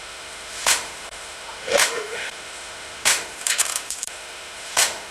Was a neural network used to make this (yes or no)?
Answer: yes